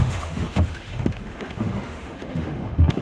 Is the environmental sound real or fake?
fake